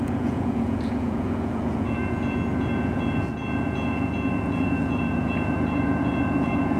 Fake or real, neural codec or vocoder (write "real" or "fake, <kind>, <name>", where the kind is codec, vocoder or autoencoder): fake, vocoder, Vocos